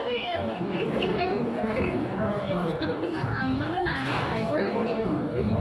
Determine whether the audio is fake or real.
fake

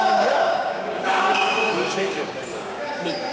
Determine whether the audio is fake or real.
fake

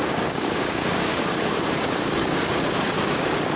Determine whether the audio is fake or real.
fake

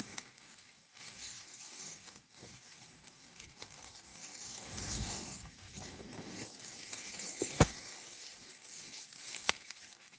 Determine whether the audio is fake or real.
fake